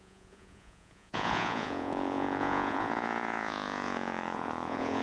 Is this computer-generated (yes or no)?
yes